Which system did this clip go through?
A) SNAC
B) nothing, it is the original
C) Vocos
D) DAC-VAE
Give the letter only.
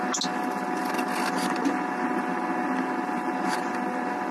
B